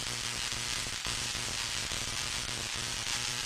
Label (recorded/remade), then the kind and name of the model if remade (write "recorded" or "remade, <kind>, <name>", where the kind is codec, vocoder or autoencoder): remade, vocoder, BigVGAN v2